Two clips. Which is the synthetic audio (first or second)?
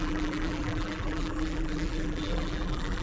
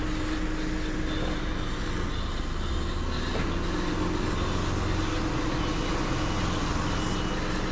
first